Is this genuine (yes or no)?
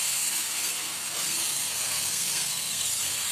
no